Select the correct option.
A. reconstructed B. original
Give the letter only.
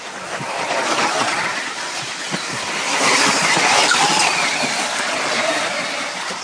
B